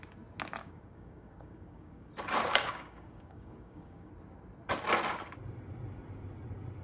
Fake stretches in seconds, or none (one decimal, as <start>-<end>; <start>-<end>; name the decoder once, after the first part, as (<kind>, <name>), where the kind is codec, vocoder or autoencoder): 0.6-2.1 (codec, DAC); 2.5-4.1